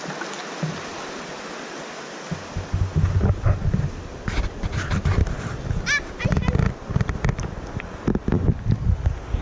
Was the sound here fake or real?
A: real